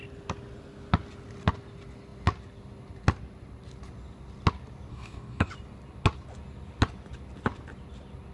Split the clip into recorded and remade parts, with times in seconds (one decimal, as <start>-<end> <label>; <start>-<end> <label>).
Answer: 0.0-4.9 recorded; 4.9-5.5 remade; 5.5-8.3 recorded